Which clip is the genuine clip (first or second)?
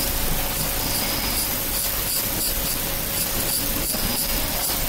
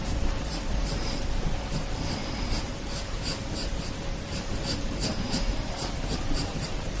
first